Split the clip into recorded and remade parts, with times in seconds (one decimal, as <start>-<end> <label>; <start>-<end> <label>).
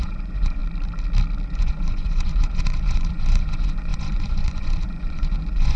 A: 0.0-0.6 remade; 0.6-1.5 recorded; 1.5-5.8 remade